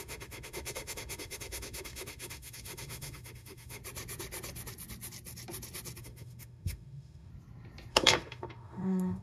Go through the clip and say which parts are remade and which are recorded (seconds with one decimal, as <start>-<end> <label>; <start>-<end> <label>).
0.0-3.8 remade; 3.8-6.0 recorded; 6.0-7.3 remade; 7.3-7.9 recorded; 7.9-9.2 remade